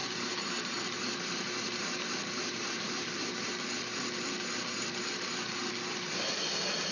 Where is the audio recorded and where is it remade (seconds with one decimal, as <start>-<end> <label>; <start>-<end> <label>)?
0.0-3.5 remade; 3.5-6.9 recorded